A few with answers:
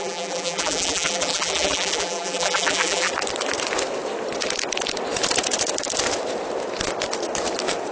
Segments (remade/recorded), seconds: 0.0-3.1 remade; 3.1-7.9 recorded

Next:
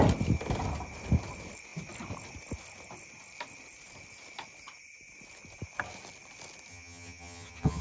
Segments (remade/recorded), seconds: 0.0-6.7 recorded; 6.7-7.8 remade

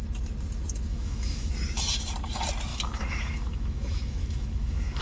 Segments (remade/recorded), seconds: 0.0-0.9 recorded; 0.9-1.5 remade; 1.5-2.7 recorded; 2.7-5.0 remade

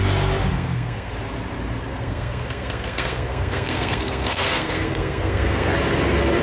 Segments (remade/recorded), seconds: 0.0-0.5 recorded; 0.5-1.1 remade; 1.1-1.9 recorded; 1.9-5.7 remade; 5.7-6.4 recorded

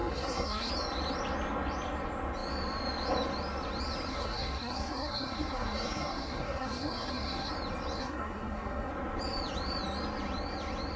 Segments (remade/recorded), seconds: 0.0-0.7 remade; 0.7-4.1 recorded; 4.1-7.5 remade; 7.5-8.0 recorded; 8.0-8.9 remade; 8.9-11.0 recorded

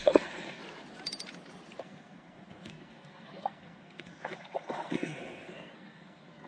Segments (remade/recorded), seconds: 0.0-0.6 remade; 0.6-1.8 recorded; 1.8-6.5 remade

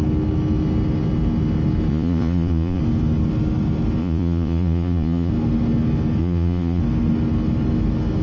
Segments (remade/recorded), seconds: 0.0-1.9 recorded; 1.9-2.8 remade; 2.8-4.0 recorded; 4.0-5.3 remade; 5.3-6.2 recorded; 6.2-6.8 remade; 6.8-8.2 recorded

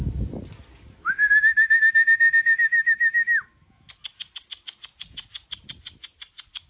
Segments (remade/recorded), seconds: 0.0-2.7 recorded; 2.7-3.9 remade; 3.9-6.7 recorded